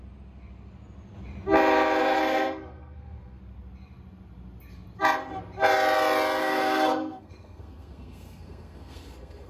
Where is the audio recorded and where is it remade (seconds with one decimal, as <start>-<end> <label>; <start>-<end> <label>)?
0.0-2.0 recorded; 2.0-3.4 remade; 3.4-6.4 recorded; 6.4-9.5 remade